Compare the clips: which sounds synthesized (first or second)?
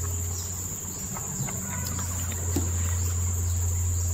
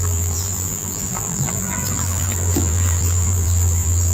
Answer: second